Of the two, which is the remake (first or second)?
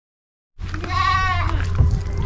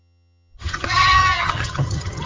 second